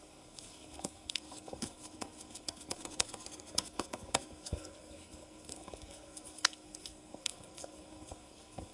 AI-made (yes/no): yes